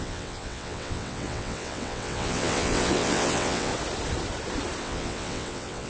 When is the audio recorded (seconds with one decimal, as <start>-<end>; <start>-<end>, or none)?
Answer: 3.7-4.8